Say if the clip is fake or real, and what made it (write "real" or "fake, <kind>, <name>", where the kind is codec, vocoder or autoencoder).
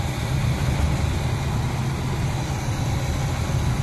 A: real